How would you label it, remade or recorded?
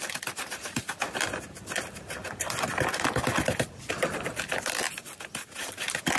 recorded